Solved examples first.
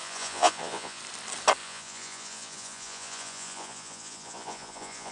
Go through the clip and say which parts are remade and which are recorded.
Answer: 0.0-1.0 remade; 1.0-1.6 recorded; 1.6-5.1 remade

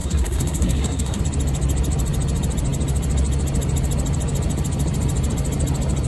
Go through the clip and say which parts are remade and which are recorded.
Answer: 0.0-1.2 remade; 1.2-6.1 recorded

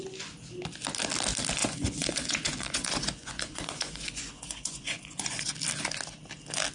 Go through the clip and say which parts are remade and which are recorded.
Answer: 0.0-1.6 recorded; 1.6-5.5 remade; 5.5-6.7 recorded

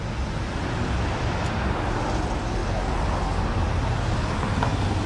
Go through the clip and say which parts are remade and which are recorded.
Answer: 0.0-5.1 recorded

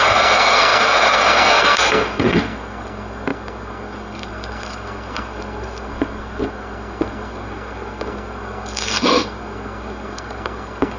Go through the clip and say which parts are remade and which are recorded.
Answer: 0.0-11.0 remade

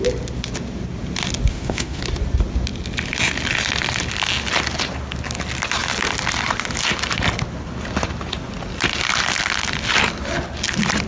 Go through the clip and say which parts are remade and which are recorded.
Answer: 0.0-1.5 recorded; 1.5-2.0 remade; 2.0-11.1 recorded